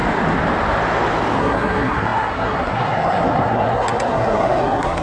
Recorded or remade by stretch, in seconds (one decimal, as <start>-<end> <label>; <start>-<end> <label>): 0.0-1.4 recorded; 1.4-5.0 remade